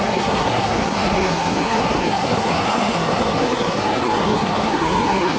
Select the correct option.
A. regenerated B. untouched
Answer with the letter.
A